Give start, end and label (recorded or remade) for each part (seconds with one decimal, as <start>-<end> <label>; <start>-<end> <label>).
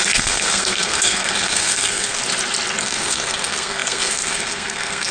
0.0-2.2 remade; 2.2-2.8 recorded; 2.8-5.1 remade